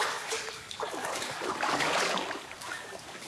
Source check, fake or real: fake